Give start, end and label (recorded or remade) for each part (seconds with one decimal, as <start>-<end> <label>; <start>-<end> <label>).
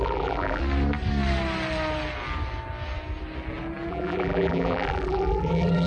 0.0-0.6 remade; 0.6-3.9 recorded; 3.9-5.9 remade